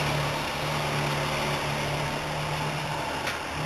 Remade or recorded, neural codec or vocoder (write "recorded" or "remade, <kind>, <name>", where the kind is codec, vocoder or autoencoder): recorded